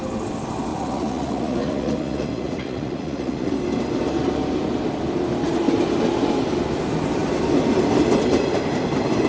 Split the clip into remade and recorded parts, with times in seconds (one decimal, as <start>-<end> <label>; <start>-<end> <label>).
0.0-0.7 recorded; 0.7-3.5 remade; 3.5-9.3 recorded